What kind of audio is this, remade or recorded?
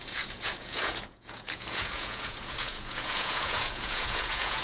remade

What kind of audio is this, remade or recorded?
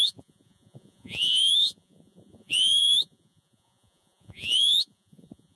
remade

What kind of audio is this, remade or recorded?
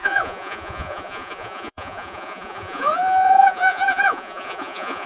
remade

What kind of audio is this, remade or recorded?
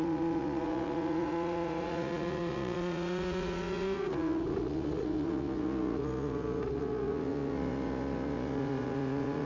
remade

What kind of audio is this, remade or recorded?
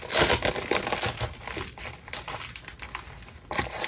recorded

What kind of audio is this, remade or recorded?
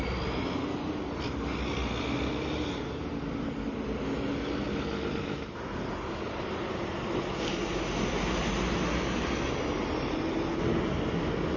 recorded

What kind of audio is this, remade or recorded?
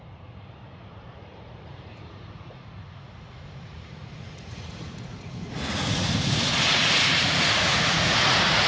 remade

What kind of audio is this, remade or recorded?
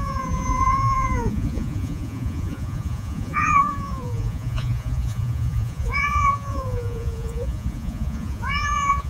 remade